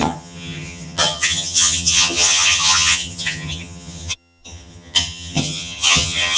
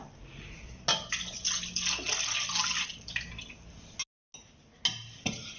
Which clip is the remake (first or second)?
first